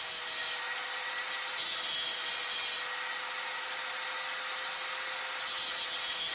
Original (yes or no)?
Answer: yes